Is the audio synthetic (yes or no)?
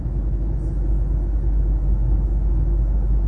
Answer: yes